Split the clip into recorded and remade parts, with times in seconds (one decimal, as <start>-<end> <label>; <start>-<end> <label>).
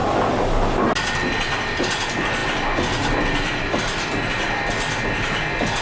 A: 0.0-5.8 recorded